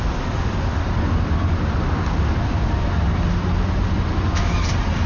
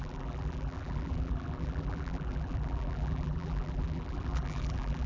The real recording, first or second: first